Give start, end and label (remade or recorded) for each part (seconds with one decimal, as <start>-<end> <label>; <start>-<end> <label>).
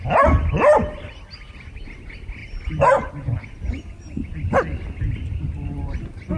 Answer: 0.0-6.4 recorded